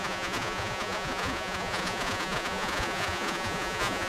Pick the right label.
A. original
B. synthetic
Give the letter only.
B